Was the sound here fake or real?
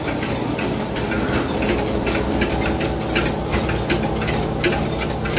real